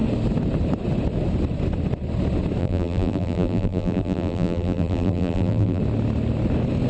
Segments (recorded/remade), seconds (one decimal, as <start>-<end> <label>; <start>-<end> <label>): 0.0-2.6 recorded; 2.6-5.8 remade; 5.8-6.9 recorded